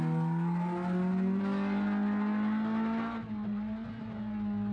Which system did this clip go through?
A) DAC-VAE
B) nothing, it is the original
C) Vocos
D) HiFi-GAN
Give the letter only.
B